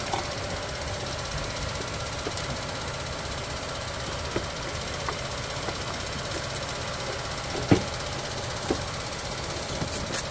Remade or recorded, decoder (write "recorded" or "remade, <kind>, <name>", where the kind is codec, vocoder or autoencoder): recorded